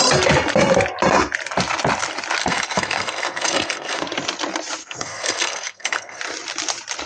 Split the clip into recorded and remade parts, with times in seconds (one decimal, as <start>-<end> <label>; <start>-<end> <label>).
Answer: 0.0-2.4 recorded; 2.4-4.0 remade; 4.0-4.8 recorded; 4.8-6.2 remade; 6.2-7.1 recorded